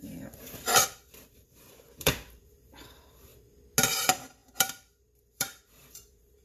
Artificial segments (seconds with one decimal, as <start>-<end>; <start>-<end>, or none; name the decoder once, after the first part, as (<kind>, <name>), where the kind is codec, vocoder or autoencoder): 0.0-3.3 (vocoder, BigVGAN v2); 3.8-6.4